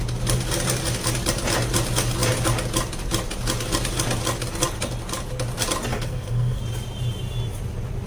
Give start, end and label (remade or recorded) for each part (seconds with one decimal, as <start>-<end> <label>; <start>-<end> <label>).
0.0-5.9 recorded; 5.9-6.6 remade; 6.6-8.1 recorded